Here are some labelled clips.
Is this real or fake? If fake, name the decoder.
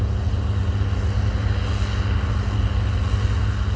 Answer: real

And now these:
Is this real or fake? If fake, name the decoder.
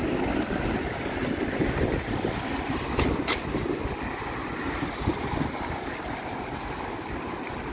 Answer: real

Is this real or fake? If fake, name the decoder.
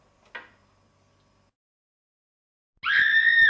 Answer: real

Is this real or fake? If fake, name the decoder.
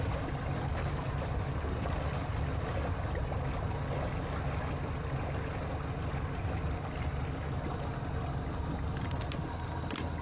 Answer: real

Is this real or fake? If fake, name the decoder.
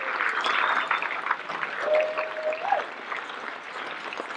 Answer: real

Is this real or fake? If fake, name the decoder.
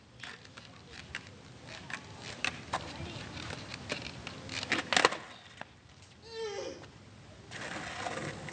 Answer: real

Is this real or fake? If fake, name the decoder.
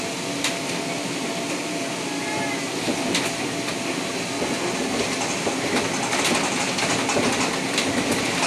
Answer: real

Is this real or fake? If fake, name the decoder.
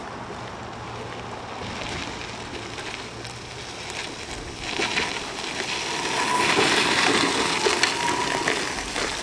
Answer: real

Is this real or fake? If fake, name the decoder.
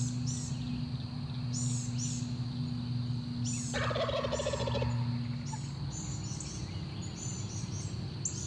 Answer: real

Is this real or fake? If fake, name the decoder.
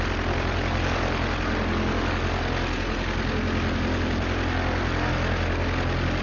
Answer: real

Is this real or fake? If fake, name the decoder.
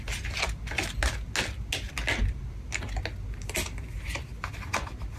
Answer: real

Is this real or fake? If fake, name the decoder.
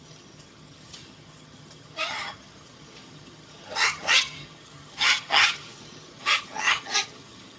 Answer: fake, vocoder, HiFi-GAN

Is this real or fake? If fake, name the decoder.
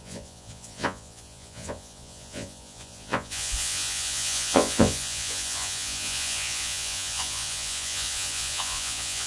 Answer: fake, vocoder, Vocos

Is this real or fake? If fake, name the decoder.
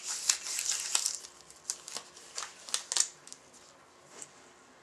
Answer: real